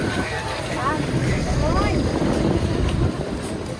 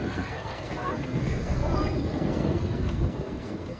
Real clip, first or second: first